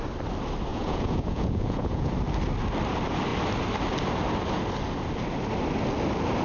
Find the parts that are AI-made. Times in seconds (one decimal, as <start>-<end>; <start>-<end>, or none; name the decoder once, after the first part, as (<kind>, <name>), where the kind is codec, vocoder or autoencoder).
0.7-2.1 (vocoder, Vocos)